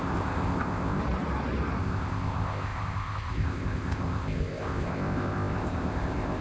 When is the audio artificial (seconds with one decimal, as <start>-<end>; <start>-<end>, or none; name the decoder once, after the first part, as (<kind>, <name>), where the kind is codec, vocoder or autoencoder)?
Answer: 0.0-1.0 (codec, ZipCodec); 1.8-6.4